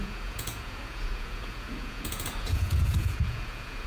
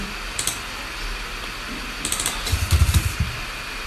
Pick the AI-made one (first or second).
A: first